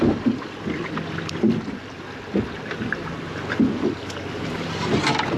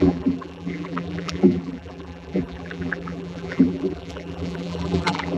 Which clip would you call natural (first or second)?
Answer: first